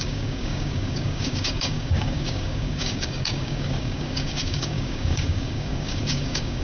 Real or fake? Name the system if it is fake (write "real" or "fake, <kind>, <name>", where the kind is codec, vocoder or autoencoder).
fake, codec, DAC